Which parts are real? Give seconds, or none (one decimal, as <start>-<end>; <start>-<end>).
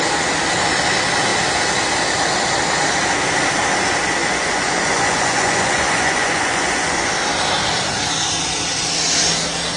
0.0-4.2; 7.1-9.8